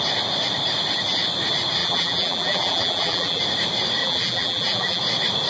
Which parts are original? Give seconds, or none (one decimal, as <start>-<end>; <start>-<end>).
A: 0.0-1.8; 3.4-4.0; 5.0-5.5